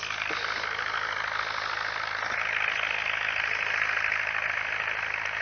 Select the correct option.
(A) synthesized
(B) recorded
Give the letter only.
B